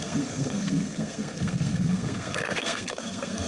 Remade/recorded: remade